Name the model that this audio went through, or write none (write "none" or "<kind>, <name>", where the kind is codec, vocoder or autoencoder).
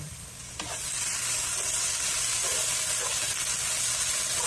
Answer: none